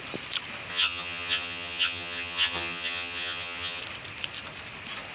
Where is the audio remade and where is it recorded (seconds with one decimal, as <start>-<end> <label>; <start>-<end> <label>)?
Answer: 0.0-0.7 recorded; 0.7-3.8 remade; 3.8-5.1 recorded